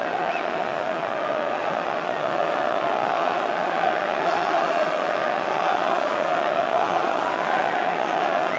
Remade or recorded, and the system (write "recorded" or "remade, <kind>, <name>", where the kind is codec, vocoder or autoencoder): remade, vocoder, Vocos